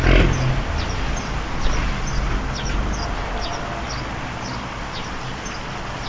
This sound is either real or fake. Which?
real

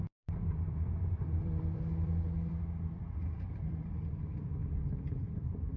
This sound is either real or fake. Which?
fake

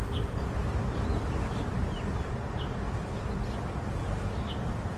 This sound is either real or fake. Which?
real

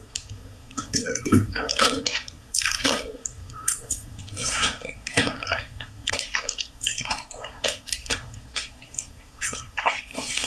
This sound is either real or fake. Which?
fake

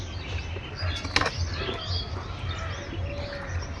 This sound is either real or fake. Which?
real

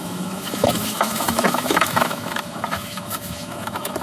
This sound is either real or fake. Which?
fake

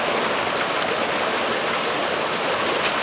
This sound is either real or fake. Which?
real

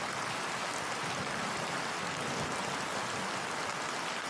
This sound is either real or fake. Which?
real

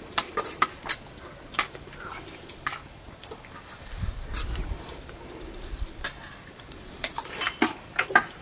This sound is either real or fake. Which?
fake